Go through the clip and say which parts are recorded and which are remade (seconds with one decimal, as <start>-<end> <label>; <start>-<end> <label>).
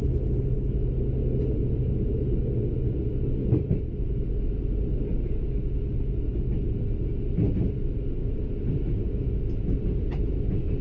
0.0-10.8 recorded